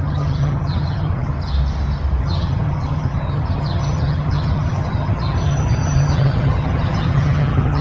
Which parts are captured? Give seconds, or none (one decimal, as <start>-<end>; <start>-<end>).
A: 1.3-2.2